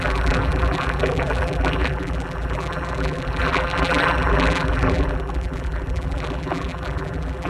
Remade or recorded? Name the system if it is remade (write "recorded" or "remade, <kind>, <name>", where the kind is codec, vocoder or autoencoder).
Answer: remade, vocoder, BigVGAN v2